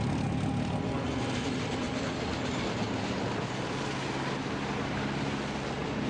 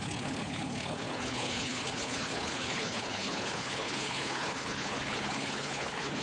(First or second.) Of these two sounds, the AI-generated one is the second